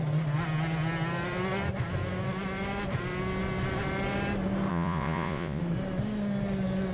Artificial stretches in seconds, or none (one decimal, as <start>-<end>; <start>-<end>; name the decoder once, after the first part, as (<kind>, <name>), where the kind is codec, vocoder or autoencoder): 4.7-5.6 (vocoder, Vocos)